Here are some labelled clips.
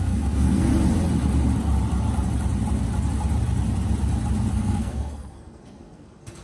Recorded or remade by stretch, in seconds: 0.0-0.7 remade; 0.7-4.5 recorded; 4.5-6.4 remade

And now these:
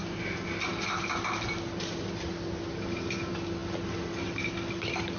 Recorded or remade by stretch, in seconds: 0.0-5.2 recorded

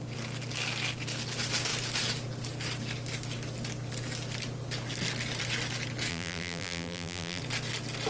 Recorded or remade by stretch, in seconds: 0.0-6.1 recorded; 6.1-7.4 remade; 7.4-8.1 recorded

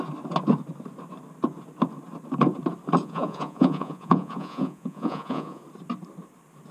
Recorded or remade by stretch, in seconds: 0.0-3.0 recorded; 3.0-5.6 remade; 5.6-6.7 recorded

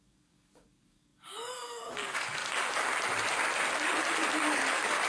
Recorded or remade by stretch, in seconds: 0.0-2.4 remade; 2.4-4.4 recorded; 4.4-5.1 remade

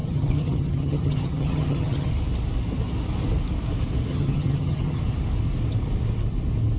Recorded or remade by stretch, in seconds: 0.0-2.1 remade; 2.1-4.1 recorded; 4.1-5.0 remade; 5.0-6.8 recorded

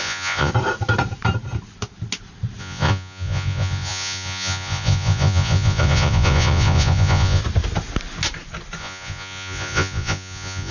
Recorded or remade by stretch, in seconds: 0.0-0.5 remade; 0.5-2.6 recorded; 2.6-7.4 remade; 7.4-8.8 recorded; 8.8-10.7 remade

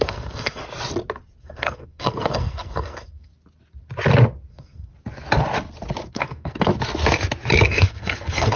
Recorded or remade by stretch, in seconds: 0.0-0.6 remade; 0.6-1.4 recorded; 1.4-3.3 remade; 3.3-4.5 recorded; 4.5-4.9 remade; 4.9-6.1 recorded; 6.1-6.7 remade; 6.7-7.7 recorded; 7.7-8.6 remade